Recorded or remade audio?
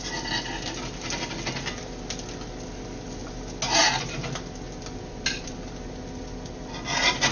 recorded